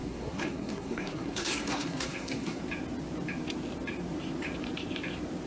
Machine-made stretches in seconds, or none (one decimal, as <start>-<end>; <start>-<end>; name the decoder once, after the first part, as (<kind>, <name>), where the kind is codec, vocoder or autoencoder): 0.0-2.6 (codec, SNAC)